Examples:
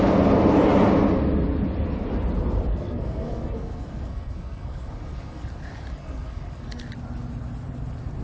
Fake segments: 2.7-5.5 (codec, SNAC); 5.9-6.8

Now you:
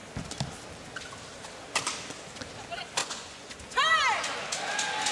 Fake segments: 3.0-3.6 (vocoder, Vocos)

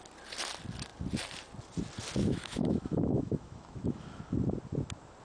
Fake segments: 2.2-4.2 (autoencoder, DAC-VAE)

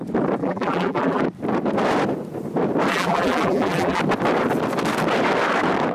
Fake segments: 0.4-1.2 (vocoder, BigVGAN v2); 2.9-4.0